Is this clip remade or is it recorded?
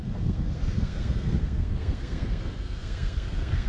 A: remade